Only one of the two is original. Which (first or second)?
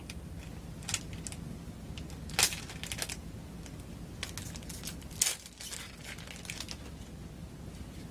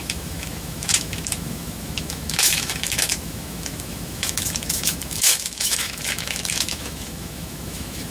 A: first